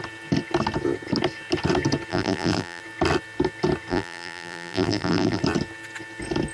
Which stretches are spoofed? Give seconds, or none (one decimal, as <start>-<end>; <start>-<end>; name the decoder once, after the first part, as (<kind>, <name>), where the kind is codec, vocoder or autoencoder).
2.1-2.8 (vocoder, BigVGAN v2); 3.9-5.4